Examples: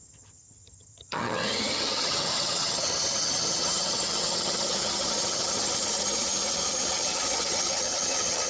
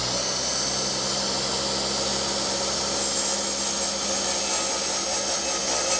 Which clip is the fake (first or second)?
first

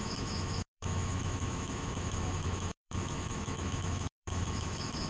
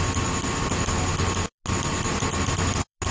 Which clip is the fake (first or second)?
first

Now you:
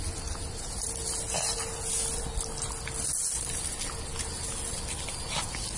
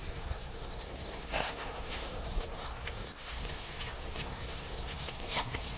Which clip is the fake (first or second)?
second